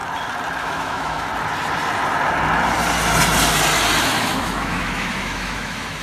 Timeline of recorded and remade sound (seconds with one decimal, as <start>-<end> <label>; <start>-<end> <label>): 0.0-0.6 recorded; 0.6-1.3 remade; 1.3-4.0 recorded; 4.0-6.0 remade